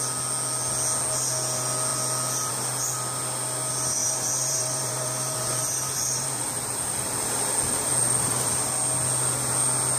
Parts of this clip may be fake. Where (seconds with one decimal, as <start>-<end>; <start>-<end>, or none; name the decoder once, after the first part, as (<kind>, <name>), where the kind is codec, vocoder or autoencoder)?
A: 4.0-8.5 (vocoder, BigVGAN v2)